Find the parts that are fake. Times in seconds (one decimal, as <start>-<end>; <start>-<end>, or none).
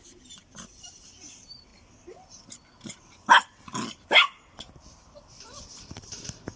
0.0-1.7; 5.6-6.6